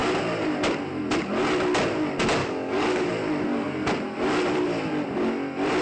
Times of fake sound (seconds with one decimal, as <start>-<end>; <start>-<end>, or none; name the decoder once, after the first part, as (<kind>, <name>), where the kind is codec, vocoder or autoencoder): 2.4-3.1 (codec, DAC)